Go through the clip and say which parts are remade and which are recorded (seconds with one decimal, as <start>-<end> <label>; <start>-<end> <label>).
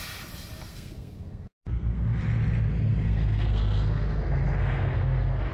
0.0-0.7 recorded; 0.7-2.2 remade; 2.2-2.9 recorded; 2.9-5.5 remade